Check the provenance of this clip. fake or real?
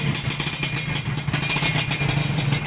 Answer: real